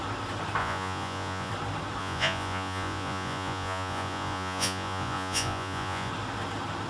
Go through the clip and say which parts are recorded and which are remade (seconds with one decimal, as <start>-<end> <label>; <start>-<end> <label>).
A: 0.0-0.6 recorded; 0.6-1.5 remade; 1.5-2.0 recorded; 2.0-6.1 remade; 6.1-6.9 recorded